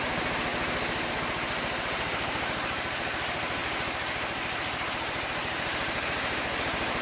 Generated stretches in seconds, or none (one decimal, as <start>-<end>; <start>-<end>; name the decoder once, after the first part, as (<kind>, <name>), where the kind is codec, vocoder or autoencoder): 0.0-0.5 (vocoder, BigVGAN v2); 1.1-3.6; 4.9-7.0